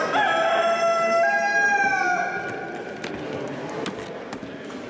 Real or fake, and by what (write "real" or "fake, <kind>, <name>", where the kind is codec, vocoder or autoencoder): real